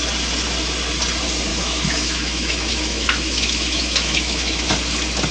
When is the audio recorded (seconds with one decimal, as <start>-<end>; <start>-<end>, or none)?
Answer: 0.0-1.5; 4.7-5.3